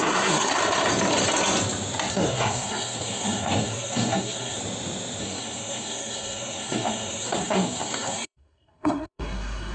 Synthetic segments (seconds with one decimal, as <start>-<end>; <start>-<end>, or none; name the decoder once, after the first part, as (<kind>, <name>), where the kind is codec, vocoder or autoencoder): 0.0-0.6 (codec, SNAC); 2.1-4.6; 5.2-9.7